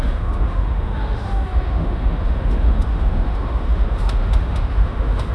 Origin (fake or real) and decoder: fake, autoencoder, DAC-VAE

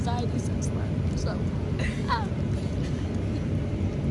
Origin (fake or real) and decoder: real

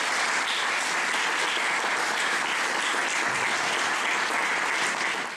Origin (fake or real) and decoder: real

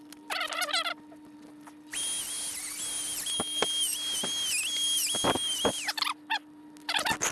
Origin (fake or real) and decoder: real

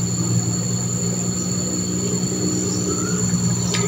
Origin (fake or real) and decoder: real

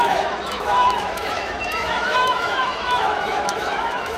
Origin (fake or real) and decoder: fake, autoencoder, DAC-VAE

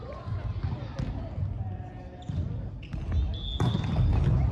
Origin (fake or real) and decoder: real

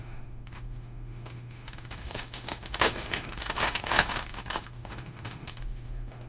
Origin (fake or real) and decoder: fake, autoencoder, DAC-VAE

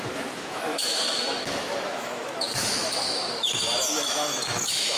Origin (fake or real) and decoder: fake, autoencoder, DAC-VAE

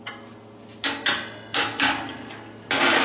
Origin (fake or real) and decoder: real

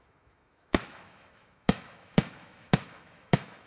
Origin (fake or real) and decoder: fake, autoencoder, DAC-VAE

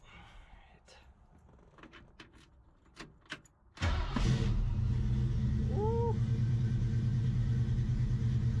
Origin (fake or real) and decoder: real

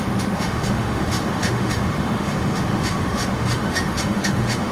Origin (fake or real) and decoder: fake, autoencoder, DAC-VAE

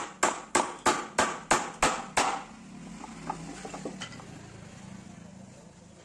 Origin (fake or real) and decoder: real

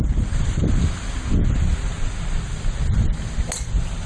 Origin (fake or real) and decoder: real